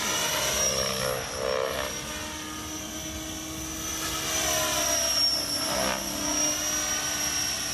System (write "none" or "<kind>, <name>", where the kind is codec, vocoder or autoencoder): none